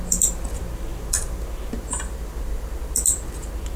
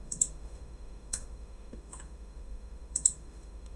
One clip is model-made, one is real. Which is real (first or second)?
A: first